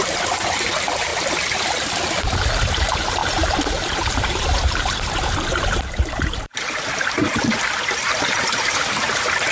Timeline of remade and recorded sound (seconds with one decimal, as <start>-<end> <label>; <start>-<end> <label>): 0.0-1.1 remade; 1.1-2.2 recorded; 2.2-6.5 remade; 6.5-8.5 recorded; 8.5-9.5 remade